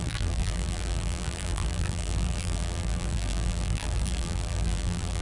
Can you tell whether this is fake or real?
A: fake